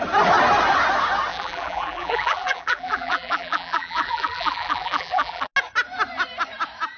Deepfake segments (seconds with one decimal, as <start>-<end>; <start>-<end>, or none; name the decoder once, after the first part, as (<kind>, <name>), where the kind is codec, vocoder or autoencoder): 1.3-5.5 (vocoder, BigVGAN v2)